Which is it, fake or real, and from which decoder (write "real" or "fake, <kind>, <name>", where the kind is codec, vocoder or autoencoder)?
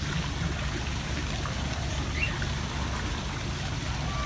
real